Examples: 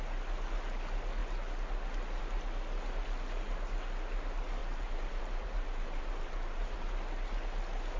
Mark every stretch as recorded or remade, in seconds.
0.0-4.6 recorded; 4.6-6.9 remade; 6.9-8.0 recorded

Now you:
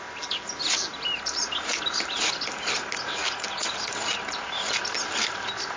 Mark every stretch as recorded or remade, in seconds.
0.0-5.8 recorded

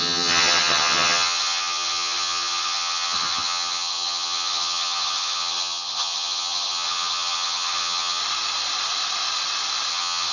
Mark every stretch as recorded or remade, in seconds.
0.0-8.2 remade; 8.2-9.9 recorded; 9.9-10.3 remade

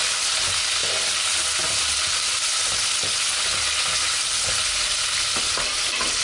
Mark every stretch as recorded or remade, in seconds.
0.0-6.2 recorded

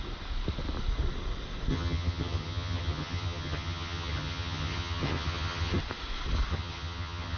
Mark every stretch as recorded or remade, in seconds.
0.0-1.7 recorded; 1.7-5.8 remade; 5.8-6.5 recorded; 6.5-7.4 remade

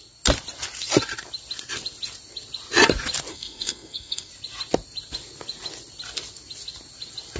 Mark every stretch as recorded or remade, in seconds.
0.0-3.3 recorded; 3.3-4.3 remade; 4.3-7.4 recorded

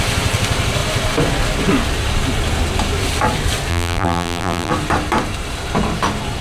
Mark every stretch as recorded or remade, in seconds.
0.0-3.7 recorded; 3.7-4.7 remade; 4.7-6.4 recorded